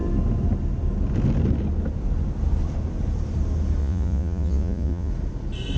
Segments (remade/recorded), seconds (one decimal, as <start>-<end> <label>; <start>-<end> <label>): 0.0-3.8 recorded; 3.8-5.1 remade; 5.1-5.8 recorded